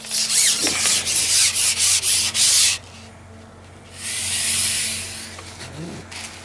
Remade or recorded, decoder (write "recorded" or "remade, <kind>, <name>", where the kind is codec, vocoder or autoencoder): recorded